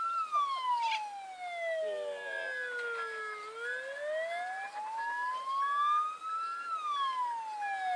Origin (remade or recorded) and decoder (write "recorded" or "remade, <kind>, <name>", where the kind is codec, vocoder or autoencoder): recorded